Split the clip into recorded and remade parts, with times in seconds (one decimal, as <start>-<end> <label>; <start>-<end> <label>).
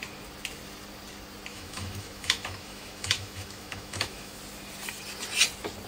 0.0-1.5 recorded; 1.5-4.4 remade; 4.4-5.9 recorded